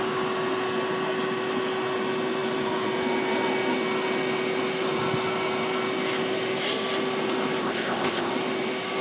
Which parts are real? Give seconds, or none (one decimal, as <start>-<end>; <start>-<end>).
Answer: 0.0-7.6; 8.3-9.0